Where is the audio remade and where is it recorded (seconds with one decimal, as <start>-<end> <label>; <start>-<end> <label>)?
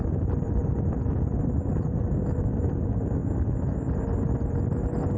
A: 0.0-0.6 remade; 0.6-1.7 recorded; 1.7-3.2 remade; 3.2-5.2 recorded